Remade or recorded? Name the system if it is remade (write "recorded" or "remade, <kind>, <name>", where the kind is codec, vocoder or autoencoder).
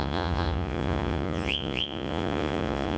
remade, vocoder, Vocos